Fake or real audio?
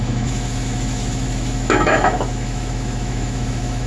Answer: fake